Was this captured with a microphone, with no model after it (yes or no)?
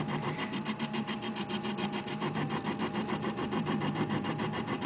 no